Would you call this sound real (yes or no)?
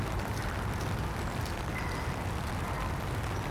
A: yes